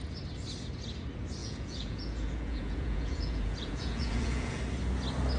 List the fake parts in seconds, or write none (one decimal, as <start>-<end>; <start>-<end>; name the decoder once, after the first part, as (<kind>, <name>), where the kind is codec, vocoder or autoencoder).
1.4-4.6 (vocoder, Vocos)